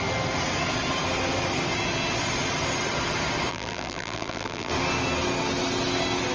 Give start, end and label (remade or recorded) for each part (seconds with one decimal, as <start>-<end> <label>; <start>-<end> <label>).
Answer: 0.0-3.5 recorded; 3.5-4.7 remade; 4.7-6.3 recorded